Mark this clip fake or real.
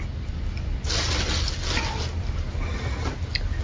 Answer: real